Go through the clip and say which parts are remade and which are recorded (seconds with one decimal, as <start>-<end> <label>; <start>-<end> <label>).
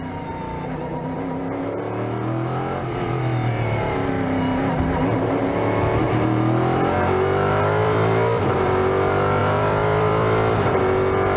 0.0-7.8 recorded; 7.8-8.4 remade; 8.4-9.4 recorded; 9.4-10.8 remade; 10.8-11.4 recorded